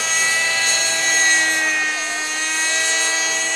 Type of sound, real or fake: real